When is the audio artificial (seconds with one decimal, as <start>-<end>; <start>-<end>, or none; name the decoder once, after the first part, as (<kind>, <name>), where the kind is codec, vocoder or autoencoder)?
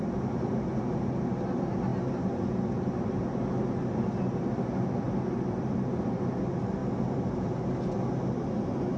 none